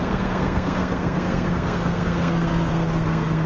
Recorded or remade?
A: remade